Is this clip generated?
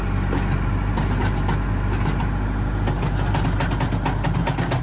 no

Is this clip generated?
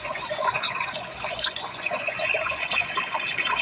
yes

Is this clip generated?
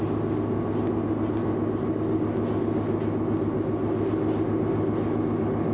no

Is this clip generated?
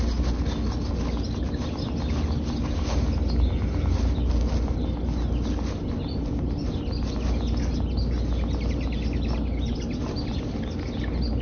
no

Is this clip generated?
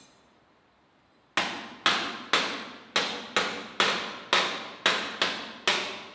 no